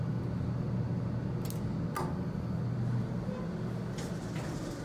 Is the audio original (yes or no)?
yes